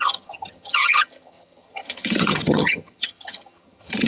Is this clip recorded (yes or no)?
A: no